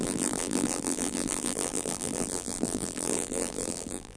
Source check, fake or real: fake